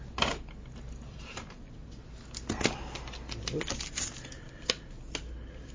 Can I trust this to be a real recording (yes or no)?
yes